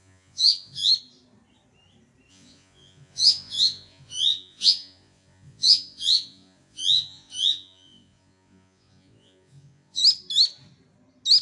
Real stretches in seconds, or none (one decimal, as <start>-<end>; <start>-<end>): 0.9-2.3; 10.0-11.4

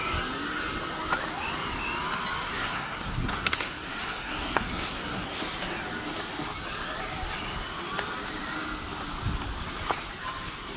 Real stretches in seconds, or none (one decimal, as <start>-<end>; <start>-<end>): 0.0-2.5; 5.4-10.8